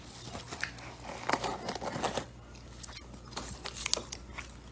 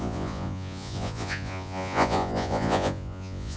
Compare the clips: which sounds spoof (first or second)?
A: second